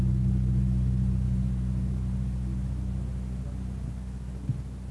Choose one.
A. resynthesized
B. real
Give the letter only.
B